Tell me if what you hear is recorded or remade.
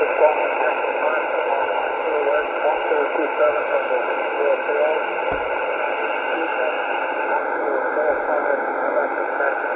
recorded